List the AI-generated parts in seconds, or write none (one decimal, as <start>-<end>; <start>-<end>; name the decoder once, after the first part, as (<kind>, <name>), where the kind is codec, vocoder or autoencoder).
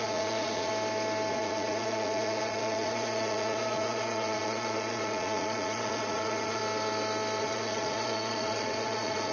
0.0-0.7 (vocoder, Vocos); 1.3-6.6; 7.4-9.3